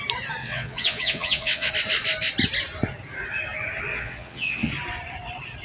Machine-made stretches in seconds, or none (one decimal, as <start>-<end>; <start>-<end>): 0.4-1.7; 3.9-4.7